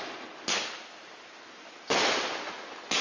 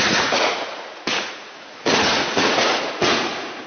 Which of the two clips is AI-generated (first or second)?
second